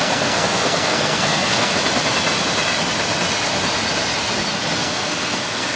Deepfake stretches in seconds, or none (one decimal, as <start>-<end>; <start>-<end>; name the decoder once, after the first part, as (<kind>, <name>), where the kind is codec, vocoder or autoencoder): 0.0-1.7 (codec, SNAC); 4.8-5.8